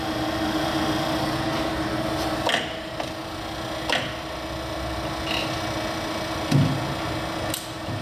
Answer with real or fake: real